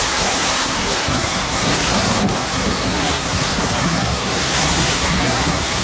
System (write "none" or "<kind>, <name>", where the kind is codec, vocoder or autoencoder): codec, SNAC